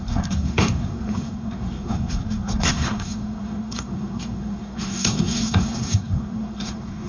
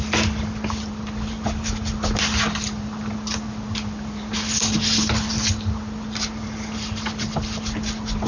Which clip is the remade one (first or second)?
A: first